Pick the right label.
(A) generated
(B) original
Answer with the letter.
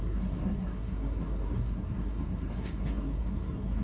A